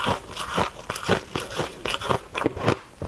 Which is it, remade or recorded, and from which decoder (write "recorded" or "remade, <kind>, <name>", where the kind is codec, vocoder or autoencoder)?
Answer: recorded